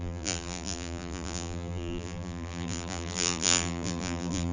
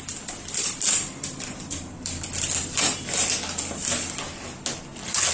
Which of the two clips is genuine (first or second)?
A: second